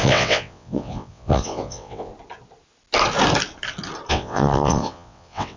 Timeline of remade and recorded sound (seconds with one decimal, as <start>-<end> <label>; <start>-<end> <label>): 0.0-2.1 remade; 2.1-4.1 recorded; 4.1-5.6 remade